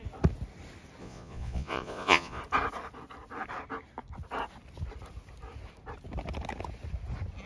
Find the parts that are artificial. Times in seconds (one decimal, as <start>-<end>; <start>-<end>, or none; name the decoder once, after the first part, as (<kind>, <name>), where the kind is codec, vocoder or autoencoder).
1.0-2.4 (vocoder, Vocos)